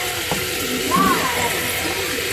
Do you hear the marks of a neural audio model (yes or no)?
no